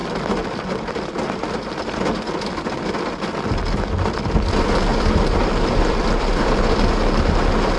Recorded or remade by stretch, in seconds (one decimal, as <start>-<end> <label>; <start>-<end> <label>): 0.0-4.9 recorded; 4.9-6.7 remade; 6.7-7.8 recorded